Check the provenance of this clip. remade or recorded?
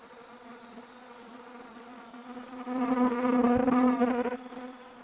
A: remade